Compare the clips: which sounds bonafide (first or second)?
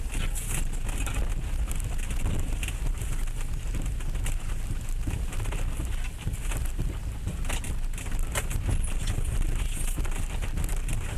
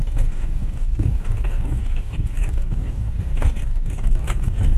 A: first